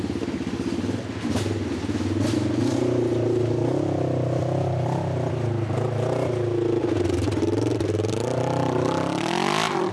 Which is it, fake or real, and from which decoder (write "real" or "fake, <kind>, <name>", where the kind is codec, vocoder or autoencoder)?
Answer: real